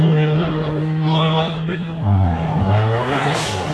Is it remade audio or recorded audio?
remade